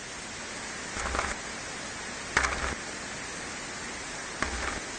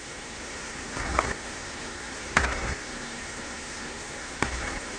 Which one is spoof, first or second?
second